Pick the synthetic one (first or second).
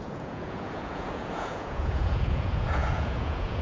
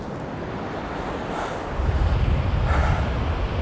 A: first